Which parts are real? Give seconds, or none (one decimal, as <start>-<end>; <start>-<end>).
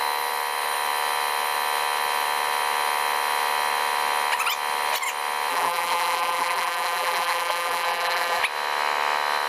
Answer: 0.0-5.5; 8.4-9.5